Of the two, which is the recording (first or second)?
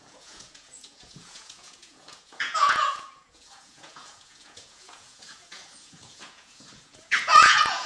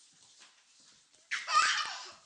second